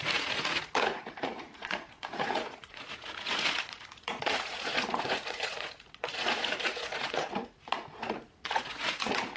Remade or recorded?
remade